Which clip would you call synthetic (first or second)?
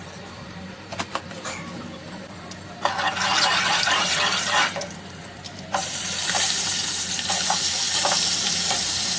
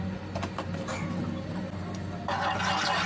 first